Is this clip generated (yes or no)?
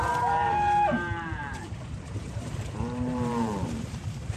yes